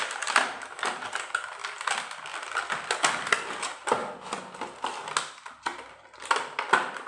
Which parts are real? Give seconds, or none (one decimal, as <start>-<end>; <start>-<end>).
4.0-6.3